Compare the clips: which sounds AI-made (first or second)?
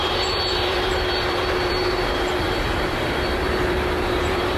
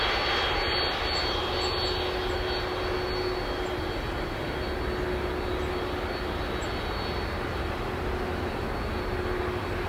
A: first